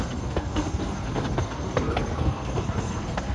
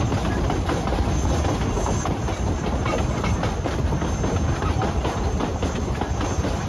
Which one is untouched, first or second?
second